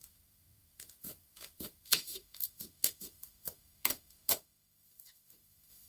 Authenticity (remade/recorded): remade